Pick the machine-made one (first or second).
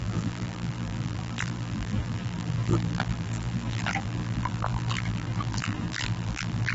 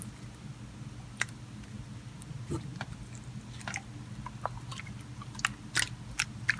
first